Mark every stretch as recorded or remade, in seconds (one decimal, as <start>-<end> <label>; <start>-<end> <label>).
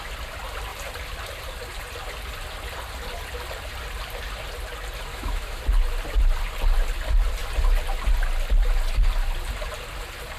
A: 0.0-5.1 recorded; 5.1-5.6 remade; 5.6-10.4 recorded